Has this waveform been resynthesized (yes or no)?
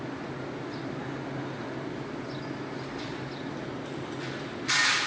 no